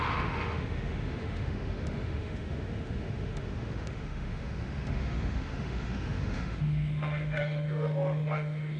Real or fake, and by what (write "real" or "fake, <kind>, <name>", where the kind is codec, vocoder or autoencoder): fake, autoencoder, DAC-VAE